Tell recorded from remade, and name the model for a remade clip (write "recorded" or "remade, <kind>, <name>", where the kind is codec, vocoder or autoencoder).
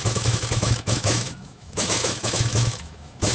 remade, autoencoder, DAC-VAE